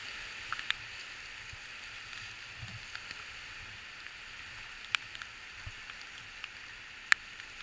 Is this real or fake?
real